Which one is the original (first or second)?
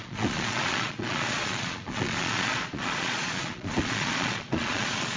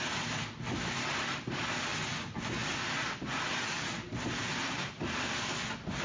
second